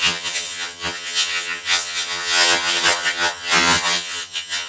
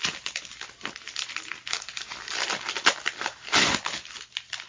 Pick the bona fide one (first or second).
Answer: second